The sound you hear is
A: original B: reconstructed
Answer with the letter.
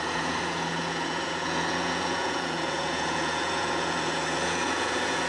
B